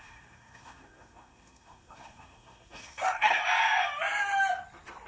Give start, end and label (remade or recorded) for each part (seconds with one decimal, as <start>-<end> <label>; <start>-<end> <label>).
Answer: 0.0-3.4 remade; 3.4-5.1 recorded